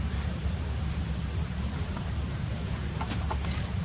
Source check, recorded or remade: recorded